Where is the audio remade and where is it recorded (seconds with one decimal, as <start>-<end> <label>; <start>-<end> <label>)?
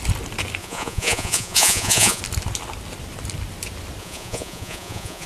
0.0-0.6 recorded; 0.6-2.2 remade; 2.2-4.0 recorded; 4.0-5.3 remade